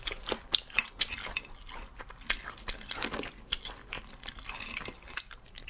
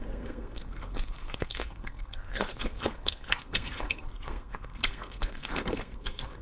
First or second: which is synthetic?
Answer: second